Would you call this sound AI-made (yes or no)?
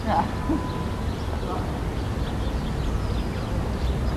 no